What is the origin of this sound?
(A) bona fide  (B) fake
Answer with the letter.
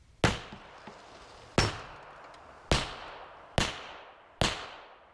A